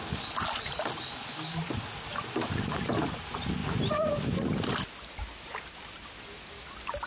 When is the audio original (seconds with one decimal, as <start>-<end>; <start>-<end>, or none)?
0.0-7.1